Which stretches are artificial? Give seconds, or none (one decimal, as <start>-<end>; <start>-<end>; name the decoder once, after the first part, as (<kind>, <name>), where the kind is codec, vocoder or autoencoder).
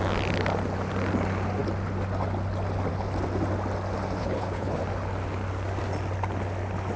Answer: 4.2-4.8 (codec, HILCodec)